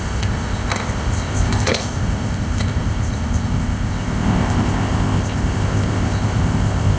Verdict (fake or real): fake